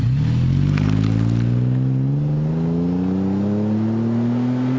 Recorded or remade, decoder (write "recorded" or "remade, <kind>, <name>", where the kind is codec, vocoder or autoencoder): recorded